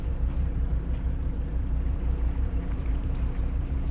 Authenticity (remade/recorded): remade